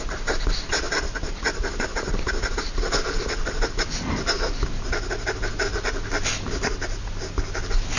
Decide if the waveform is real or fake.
real